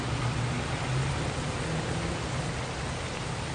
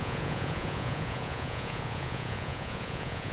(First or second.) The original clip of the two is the first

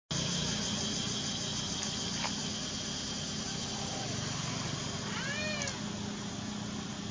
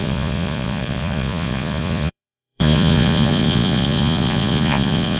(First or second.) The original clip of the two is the first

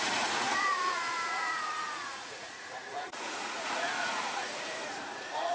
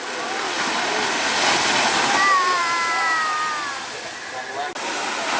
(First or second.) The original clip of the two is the second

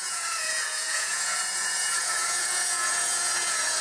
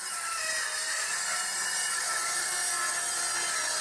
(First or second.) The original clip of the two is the second